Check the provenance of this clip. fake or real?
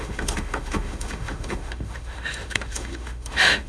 fake